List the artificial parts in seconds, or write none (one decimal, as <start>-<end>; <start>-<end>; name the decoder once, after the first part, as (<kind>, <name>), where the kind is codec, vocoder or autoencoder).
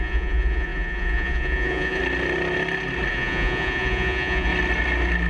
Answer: 0.0-2.0 (vocoder, Vocos); 3.1-4.5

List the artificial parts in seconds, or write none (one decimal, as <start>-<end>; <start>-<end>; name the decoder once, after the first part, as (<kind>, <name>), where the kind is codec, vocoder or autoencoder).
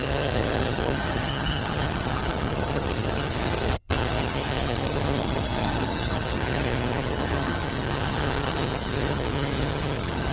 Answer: 0.0-10.3 (vocoder, HiFi-GAN)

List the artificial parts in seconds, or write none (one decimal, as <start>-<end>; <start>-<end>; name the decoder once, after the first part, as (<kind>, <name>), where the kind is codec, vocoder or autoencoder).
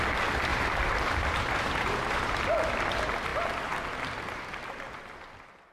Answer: 0.5-2.4 (vocoder, BigVGAN v2)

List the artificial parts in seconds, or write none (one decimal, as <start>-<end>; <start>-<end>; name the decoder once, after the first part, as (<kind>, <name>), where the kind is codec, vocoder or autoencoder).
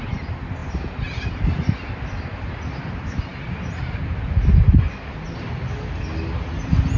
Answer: none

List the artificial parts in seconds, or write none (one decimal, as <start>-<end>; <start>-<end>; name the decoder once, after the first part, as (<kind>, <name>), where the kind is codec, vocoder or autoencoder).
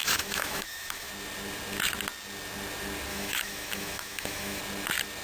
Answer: 0.0-1.1 (autoencoder, DAC-VAE); 3.1-4.6